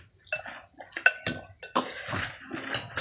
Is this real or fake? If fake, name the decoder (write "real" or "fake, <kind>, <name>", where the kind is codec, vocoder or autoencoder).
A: real